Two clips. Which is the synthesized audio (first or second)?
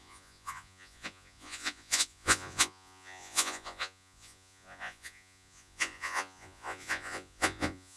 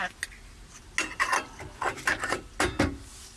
first